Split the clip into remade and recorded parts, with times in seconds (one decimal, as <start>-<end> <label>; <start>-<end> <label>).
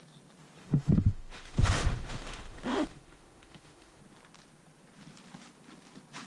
0.0-0.6 recorded; 0.6-4.0 remade; 4.0-6.3 recorded